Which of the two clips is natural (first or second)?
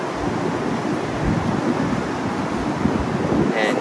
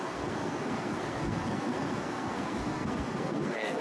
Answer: first